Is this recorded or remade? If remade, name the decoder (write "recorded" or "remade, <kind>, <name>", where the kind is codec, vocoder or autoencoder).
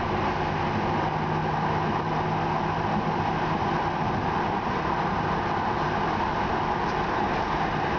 recorded